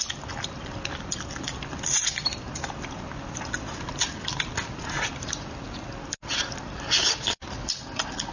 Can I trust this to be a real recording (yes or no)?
yes